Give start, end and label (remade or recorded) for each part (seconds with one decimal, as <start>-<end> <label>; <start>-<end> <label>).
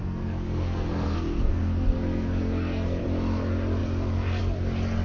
0.0-3.0 remade; 3.0-5.0 recorded